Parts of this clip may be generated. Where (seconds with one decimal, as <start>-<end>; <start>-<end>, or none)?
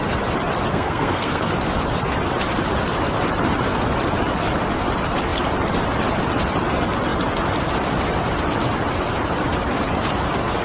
0.7-1.5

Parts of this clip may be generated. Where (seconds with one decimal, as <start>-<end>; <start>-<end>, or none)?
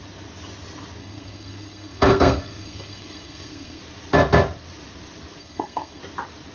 1.0-3.8; 5.4-6.0